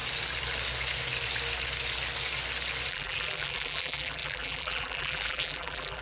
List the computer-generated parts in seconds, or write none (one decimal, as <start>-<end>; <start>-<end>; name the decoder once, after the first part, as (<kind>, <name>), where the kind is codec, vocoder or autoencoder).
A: 2.9-6.0 (vocoder, BigVGAN v2)